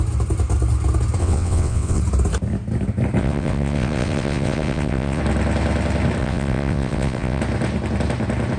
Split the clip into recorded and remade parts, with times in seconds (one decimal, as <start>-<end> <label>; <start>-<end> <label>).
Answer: 0.0-1.2 recorded; 1.2-2.0 remade; 2.0-3.2 recorded; 3.2-5.2 remade; 5.2-6.2 recorded; 6.2-7.4 remade; 7.4-8.6 recorded